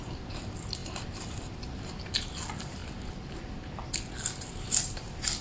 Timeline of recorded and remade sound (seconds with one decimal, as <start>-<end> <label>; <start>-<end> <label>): 0.0-2.8 remade; 2.8-4.4 recorded; 4.4-5.4 remade